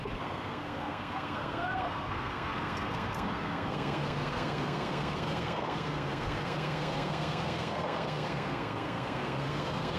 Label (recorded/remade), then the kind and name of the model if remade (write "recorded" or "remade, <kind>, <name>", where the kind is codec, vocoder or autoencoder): remade, codec, SNAC